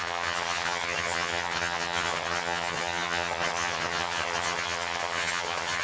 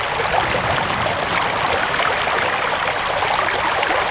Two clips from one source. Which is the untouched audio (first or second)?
second